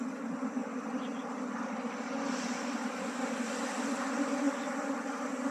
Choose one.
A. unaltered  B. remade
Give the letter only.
A